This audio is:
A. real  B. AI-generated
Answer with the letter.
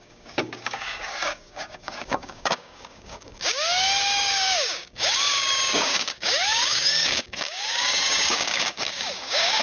B